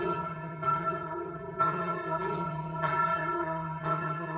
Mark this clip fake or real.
fake